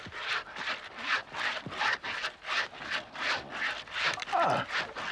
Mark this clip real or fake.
real